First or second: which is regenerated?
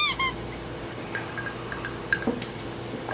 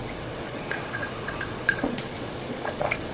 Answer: second